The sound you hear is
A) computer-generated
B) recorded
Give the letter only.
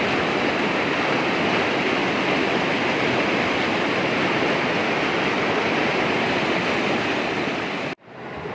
B